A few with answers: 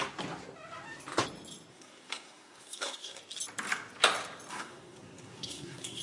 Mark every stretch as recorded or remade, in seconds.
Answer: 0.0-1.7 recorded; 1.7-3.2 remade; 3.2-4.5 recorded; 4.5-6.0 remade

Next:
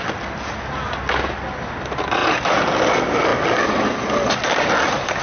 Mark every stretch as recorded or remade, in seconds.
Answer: 0.0-5.2 recorded

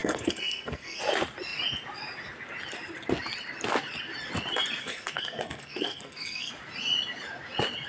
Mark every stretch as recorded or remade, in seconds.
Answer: 0.0-1.0 remade; 1.0-4.8 recorded; 4.8-6.5 remade; 6.5-7.9 recorded

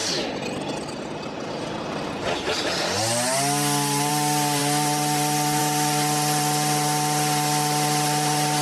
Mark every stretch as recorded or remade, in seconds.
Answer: 0.0-8.6 recorded

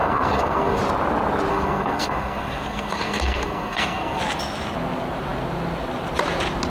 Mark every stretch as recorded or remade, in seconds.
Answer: 0.0-0.8 remade; 0.8-1.5 recorded; 1.5-4.2 remade; 4.2-6.7 recorded

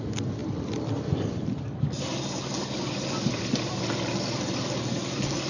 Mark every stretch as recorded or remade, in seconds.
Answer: 0.0-5.5 recorded